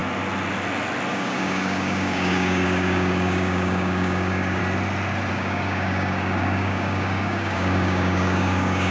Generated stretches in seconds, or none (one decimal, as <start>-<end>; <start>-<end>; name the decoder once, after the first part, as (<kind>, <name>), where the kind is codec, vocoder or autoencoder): 1.1-4.6 (codec, DAC); 5.3-8.9